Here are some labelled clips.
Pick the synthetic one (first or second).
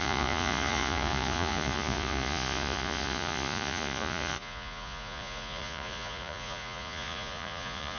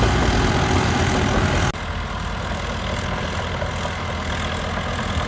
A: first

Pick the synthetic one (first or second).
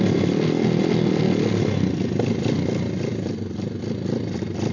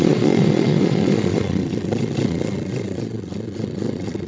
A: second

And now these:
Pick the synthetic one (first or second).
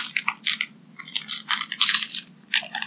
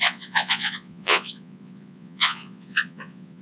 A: second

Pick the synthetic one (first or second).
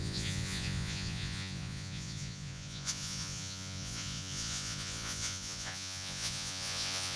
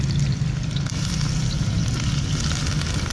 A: first